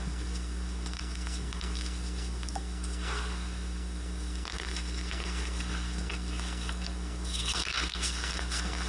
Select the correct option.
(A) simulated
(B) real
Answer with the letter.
A